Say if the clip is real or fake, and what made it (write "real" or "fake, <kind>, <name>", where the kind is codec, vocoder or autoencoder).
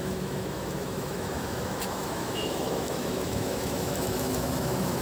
fake, autoencoder, DAC-VAE